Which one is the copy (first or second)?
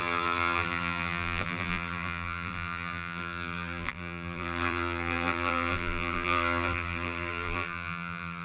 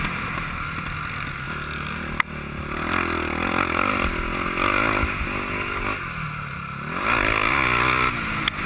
first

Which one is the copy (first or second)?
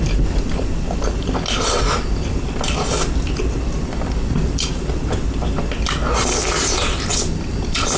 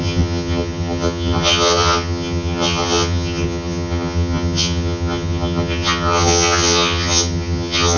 second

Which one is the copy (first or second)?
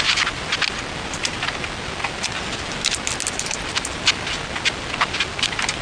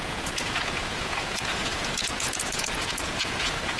second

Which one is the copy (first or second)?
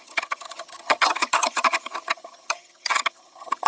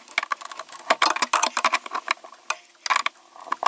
first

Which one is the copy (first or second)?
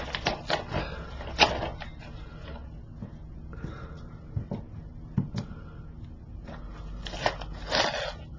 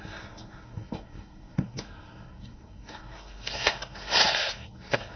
second